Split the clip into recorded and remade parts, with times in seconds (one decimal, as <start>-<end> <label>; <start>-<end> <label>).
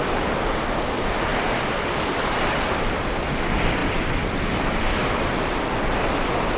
0.0-1.3 recorded; 1.3-2.3 remade; 2.3-3.8 recorded; 3.8-5.5 remade; 5.5-6.6 recorded